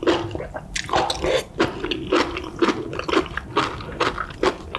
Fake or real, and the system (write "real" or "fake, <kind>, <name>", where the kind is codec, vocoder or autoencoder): real